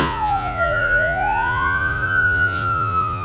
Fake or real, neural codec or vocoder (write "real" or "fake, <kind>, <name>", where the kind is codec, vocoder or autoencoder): fake, vocoder, Vocos